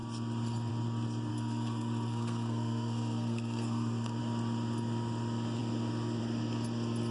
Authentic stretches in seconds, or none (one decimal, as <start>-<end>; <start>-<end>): 0.0-1.3; 4.2-7.1